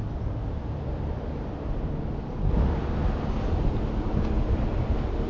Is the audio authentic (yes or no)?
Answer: yes